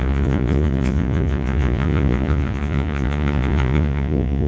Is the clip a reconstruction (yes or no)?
yes